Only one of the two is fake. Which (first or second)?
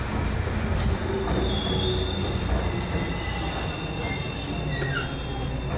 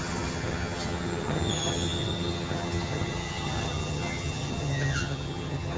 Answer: second